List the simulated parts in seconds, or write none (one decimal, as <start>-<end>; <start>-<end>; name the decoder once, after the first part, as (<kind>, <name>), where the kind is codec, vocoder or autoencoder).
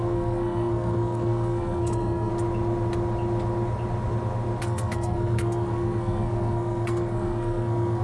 0.0-2.3 (codec, SNAC); 4.6-8.0